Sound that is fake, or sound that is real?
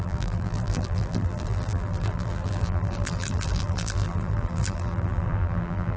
fake